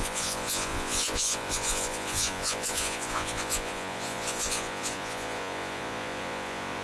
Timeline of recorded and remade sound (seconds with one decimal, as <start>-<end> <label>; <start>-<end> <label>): 0.0-6.8 remade